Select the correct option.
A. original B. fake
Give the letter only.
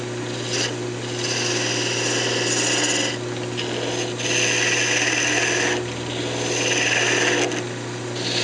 A